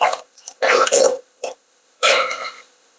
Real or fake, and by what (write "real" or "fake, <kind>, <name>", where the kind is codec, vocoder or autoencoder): fake, codec, ZipCodec